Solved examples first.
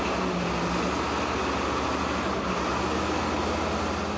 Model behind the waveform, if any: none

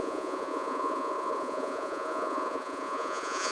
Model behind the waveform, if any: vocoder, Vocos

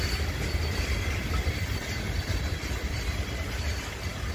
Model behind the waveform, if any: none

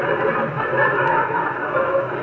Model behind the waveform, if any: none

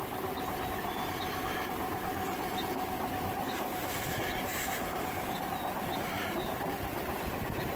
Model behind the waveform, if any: none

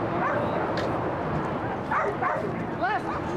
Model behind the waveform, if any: none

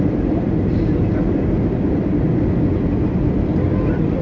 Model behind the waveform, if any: none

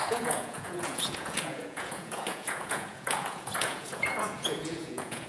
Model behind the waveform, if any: vocoder, Vocos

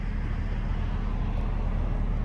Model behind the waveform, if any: none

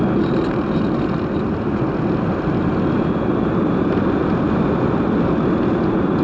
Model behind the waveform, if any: none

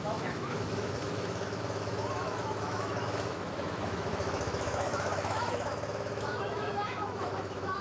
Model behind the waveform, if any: autoencoder, DAC-VAE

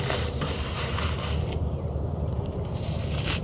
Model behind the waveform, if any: vocoder, BigVGAN v2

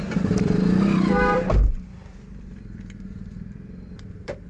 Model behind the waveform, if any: vocoder, BigVGAN v2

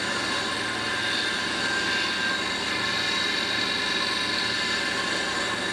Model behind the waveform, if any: none